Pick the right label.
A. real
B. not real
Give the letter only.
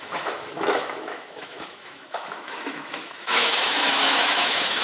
B